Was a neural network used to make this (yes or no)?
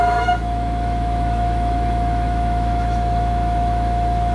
yes